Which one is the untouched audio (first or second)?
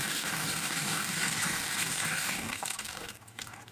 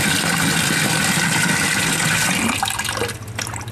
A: second